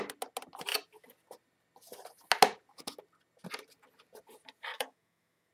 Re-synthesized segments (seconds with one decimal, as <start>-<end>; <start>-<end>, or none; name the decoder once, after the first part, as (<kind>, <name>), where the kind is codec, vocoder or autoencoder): 4.7-5.5 (autoencoder, DAC-VAE)